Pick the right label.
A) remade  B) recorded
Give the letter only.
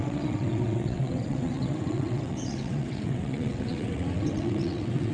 A